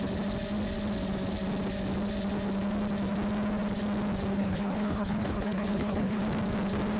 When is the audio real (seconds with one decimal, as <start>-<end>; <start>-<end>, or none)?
0.0-4.3; 6.2-7.0